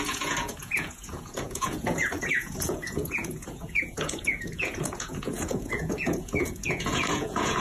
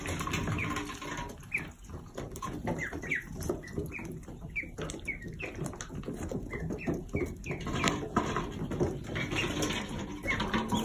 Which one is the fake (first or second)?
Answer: first